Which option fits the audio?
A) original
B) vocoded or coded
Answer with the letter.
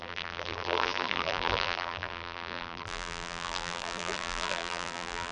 B